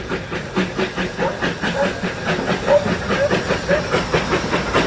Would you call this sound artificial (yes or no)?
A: no